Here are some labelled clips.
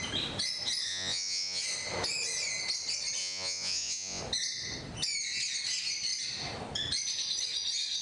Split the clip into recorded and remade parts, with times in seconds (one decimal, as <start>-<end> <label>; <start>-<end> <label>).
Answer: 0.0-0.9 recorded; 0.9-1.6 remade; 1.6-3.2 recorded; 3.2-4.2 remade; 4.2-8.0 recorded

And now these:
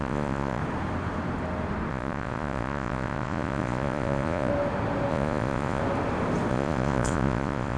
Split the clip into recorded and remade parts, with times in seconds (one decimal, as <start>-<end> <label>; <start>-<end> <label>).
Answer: 0.0-0.6 remade; 0.6-1.9 recorded; 1.9-4.5 remade; 4.5-5.1 recorded; 5.1-5.8 remade; 5.8-6.5 recorded; 6.5-7.8 remade

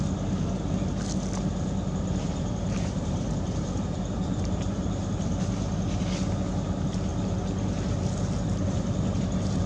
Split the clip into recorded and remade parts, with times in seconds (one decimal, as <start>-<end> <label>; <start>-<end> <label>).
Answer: 0.0-2.2 recorded; 2.2-5.2 remade; 5.2-9.7 recorded

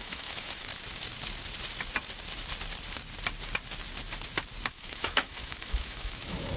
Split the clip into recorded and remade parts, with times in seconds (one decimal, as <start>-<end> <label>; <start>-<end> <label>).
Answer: 0.0-0.7 remade; 0.7-4.7 recorded; 4.7-6.6 remade